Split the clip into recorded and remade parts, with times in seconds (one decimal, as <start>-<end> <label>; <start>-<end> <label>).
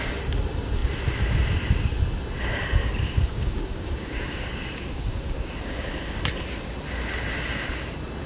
0.0-2.8 recorded; 2.8-6.2 remade; 6.2-8.3 recorded